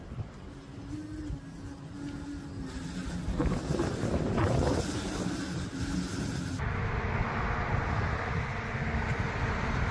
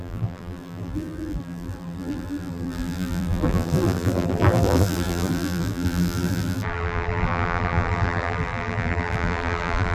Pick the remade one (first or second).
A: second